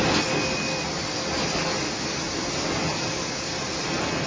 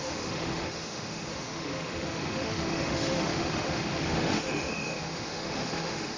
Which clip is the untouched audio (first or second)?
first